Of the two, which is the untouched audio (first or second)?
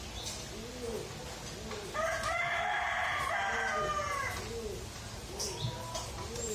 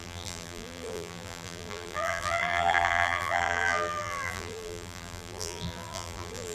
first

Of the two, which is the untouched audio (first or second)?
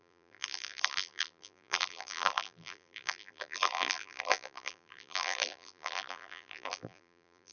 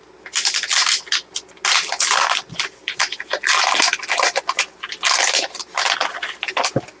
second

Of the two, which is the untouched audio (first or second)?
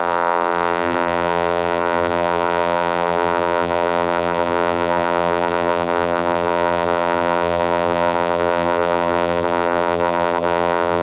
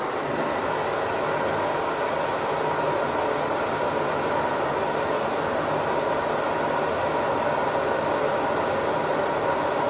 second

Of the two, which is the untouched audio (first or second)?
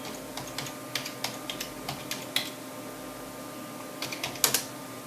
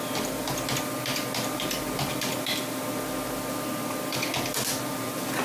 first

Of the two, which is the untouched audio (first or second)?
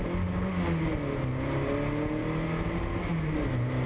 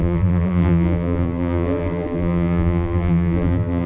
first